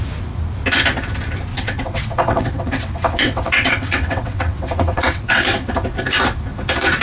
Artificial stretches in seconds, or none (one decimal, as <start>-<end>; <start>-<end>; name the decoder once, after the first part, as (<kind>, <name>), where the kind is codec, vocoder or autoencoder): 1.5-5.7 (vocoder, WaveNeXt)